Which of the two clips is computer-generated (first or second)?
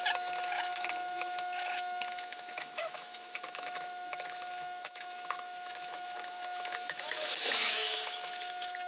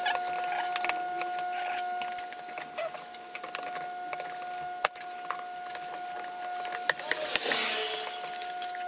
first